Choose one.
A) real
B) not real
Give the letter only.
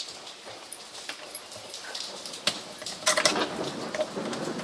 B